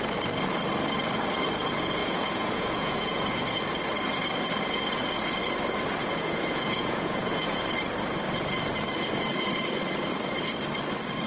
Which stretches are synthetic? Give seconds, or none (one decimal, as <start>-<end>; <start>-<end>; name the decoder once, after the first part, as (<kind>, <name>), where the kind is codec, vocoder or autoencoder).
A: 2.0-3.6 (vocoder, Vocos); 6.0-7.6